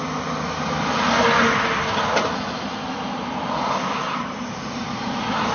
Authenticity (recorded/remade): recorded